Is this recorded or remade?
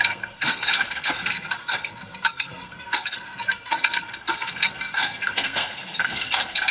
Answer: remade